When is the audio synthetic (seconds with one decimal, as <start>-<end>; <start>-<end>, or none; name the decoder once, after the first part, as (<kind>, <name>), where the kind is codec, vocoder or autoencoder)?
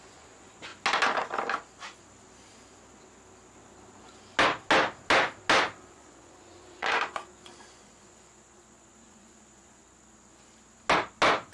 0.0-0.7 (vocoder, Vocos); 5.9-9.8